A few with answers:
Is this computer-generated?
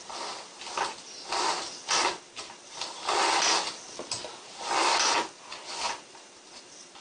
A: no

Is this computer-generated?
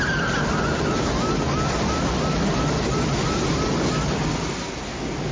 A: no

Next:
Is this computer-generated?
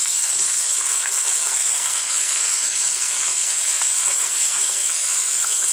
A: yes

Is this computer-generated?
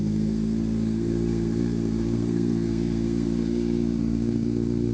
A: yes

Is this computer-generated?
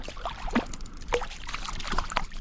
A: no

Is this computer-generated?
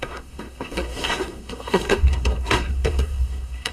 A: yes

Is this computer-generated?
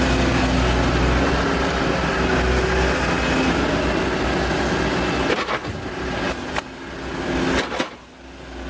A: no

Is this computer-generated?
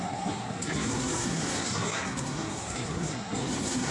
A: yes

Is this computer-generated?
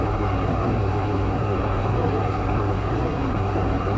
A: yes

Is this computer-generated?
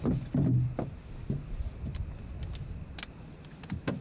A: no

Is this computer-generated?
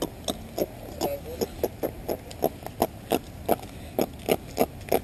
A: no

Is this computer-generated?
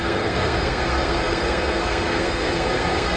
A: yes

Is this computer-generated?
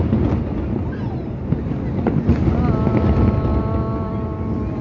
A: no